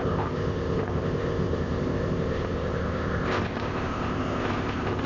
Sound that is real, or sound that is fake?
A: fake